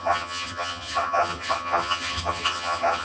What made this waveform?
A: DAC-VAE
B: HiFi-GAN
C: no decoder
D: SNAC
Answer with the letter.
B